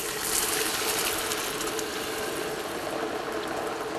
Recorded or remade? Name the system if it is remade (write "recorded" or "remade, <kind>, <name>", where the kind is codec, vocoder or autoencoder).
recorded